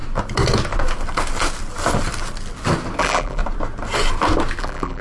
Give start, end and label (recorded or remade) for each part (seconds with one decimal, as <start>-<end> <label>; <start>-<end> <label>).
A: 0.0-3.0 recorded; 3.0-3.4 remade; 3.4-4.6 recorded; 4.6-5.0 remade